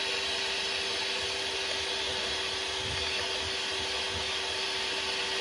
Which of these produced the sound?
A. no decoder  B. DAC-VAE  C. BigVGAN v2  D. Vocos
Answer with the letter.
A